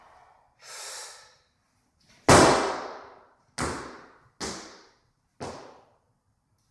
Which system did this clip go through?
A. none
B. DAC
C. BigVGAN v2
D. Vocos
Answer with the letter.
A